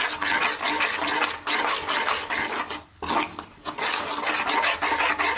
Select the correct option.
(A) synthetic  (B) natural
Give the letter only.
B